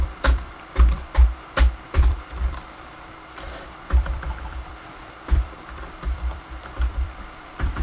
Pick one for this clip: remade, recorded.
remade